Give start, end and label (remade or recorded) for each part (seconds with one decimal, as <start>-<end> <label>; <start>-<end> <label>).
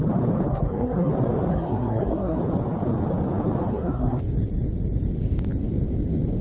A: 0.0-0.5 recorded; 0.5-1.1 remade; 1.1-1.5 recorded; 1.5-2.4 remade; 2.4-3.7 recorded; 3.7-4.2 remade; 4.2-6.4 recorded